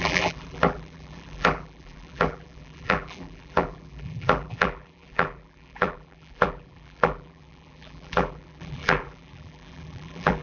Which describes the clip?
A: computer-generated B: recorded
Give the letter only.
A